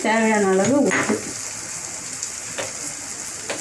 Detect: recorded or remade recorded